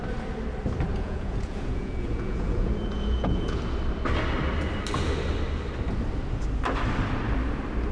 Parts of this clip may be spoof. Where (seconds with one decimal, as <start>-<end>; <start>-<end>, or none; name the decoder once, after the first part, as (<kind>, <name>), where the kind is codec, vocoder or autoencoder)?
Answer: 0.9-3.6 (vocoder, Vocos)